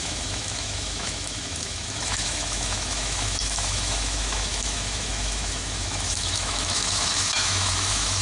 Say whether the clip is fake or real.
fake